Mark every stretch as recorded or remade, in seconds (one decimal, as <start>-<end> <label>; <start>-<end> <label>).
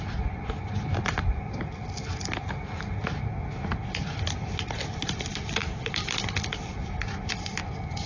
0.0-8.1 recorded